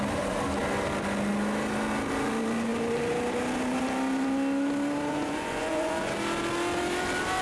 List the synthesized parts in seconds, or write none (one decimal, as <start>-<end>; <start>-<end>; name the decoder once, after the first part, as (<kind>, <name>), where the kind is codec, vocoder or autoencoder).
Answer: 5.1-6.1 (vocoder, Vocos)